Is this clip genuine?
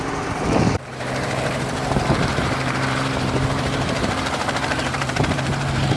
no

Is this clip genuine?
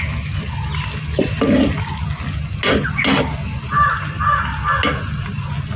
yes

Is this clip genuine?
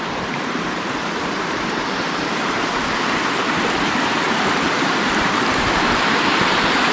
no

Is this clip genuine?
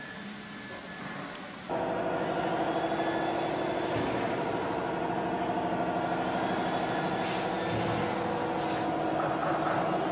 yes